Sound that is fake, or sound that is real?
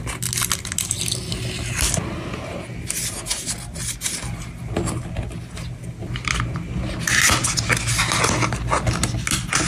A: real